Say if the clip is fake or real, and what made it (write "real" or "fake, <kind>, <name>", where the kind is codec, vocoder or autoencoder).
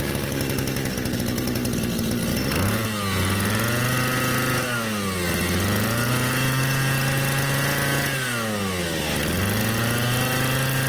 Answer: real